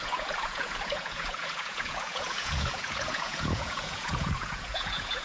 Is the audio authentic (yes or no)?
no